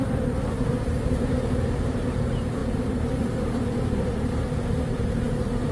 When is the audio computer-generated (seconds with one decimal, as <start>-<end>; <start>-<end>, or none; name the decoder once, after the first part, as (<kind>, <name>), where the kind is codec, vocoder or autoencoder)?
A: 0.0-5.7 (vocoder, BigVGAN v2)